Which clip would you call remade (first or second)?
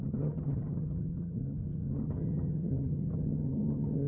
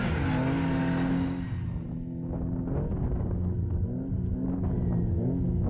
first